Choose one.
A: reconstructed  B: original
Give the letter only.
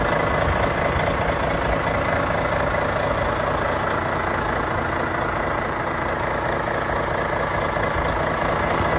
B